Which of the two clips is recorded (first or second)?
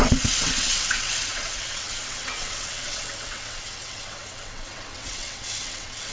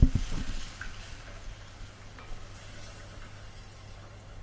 second